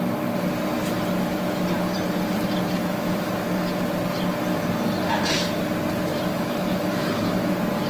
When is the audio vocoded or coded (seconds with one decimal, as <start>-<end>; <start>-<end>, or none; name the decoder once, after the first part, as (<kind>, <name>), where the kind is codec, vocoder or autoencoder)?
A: 2.8-3.3 (autoencoder, DAC-VAE); 6.1-7.5